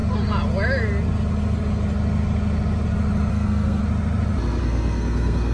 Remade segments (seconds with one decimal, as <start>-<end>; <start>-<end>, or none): 3.3-3.8; 4.6-5.5